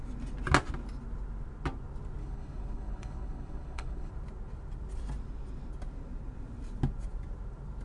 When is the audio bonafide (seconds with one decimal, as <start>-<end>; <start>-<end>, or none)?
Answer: 0.0-2.2; 4.1-7.8